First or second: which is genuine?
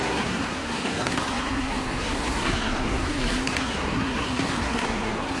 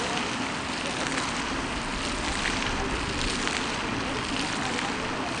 second